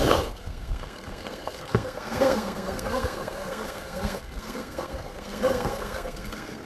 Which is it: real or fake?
fake